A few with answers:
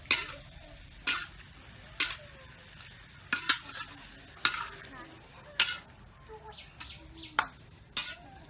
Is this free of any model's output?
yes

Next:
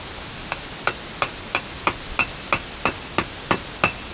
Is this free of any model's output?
yes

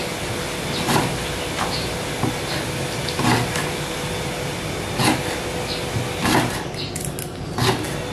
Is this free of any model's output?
yes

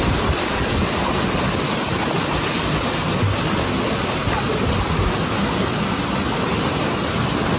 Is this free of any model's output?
yes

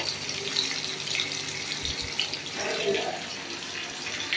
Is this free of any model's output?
yes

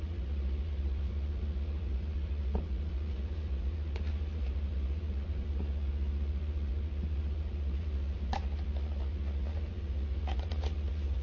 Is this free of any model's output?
no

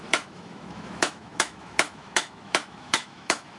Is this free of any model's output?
no